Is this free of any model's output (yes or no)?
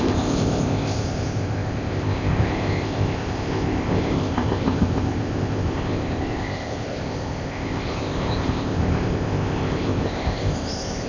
no